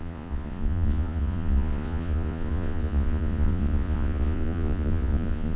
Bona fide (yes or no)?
no